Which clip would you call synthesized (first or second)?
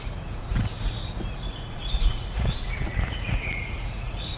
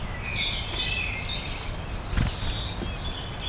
first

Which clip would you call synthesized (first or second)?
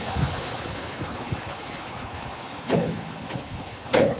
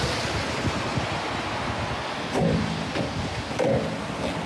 first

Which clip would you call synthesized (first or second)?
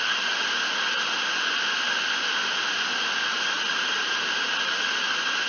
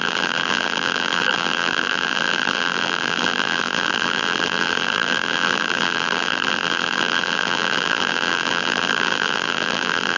second